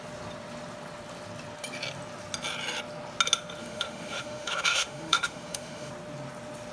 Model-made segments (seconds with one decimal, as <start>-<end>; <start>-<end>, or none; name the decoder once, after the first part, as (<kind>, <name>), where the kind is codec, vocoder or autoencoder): 3.6-5.9 (autoencoder, DAC-VAE)